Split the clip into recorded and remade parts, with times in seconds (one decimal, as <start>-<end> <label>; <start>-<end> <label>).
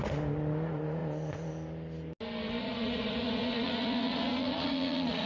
0.0-2.6 recorded; 2.6-5.3 remade